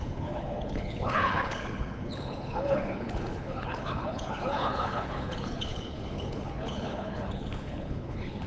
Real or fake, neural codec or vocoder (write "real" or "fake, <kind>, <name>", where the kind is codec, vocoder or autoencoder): fake, codec, HILCodec